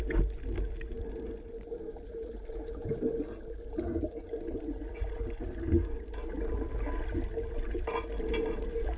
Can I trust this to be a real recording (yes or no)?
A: yes